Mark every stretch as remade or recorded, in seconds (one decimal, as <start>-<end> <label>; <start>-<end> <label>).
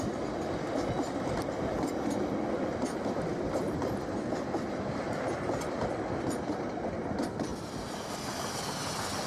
0.0-9.3 recorded